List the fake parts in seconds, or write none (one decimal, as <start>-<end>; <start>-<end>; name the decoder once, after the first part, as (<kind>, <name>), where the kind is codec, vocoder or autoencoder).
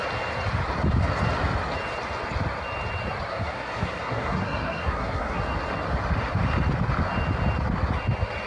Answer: 3.3-5.4 (codec, SNAC)